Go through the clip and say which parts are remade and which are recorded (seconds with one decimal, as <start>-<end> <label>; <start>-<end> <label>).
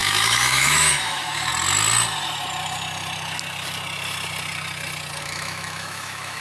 0.0-1.5 remade; 1.5-5.2 recorded; 5.2-6.4 remade